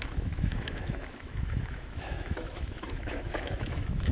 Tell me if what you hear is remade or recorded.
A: remade